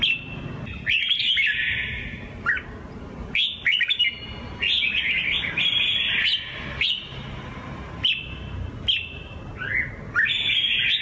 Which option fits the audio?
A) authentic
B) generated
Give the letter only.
A